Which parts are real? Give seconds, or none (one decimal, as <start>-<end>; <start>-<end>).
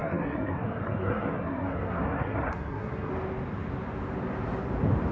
3.1-5.1